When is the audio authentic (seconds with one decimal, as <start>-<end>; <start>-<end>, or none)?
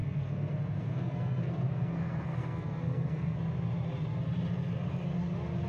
3.4-5.7